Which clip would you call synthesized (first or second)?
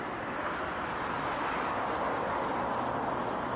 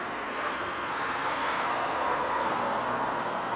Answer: second